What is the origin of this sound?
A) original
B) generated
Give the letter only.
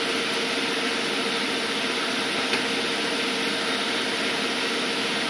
A